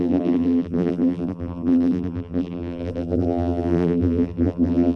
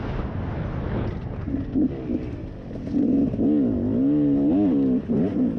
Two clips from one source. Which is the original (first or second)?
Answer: second